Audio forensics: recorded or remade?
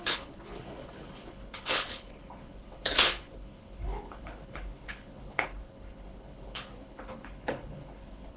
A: remade